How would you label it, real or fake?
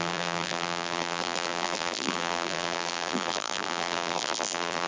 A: fake